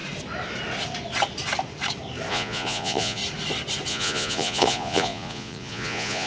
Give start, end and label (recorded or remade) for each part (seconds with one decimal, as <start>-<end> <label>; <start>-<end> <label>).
0.0-2.3 recorded; 2.3-3.2 remade; 3.2-3.9 recorded; 3.9-6.3 remade